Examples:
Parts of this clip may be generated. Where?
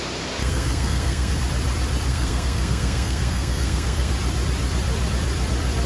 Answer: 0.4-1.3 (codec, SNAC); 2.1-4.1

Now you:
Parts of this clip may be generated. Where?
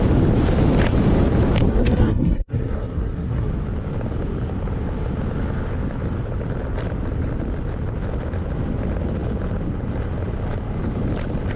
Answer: 1.7-3.5 (codec, SNAC)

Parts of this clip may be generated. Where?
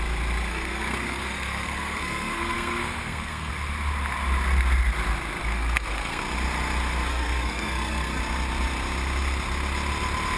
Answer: 0.5-3.5 (codec, SNAC); 5.4-6.2; 7.1-8.2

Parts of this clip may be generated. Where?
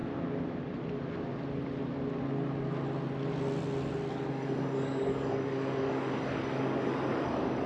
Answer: 4.3-7.7 (codec, DAC)